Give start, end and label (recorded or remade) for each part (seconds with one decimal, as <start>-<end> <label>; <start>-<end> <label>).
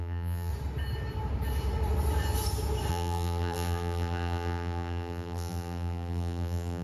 0.0-0.5 remade; 0.5-2.9 recorded; 2.9-6.8 remade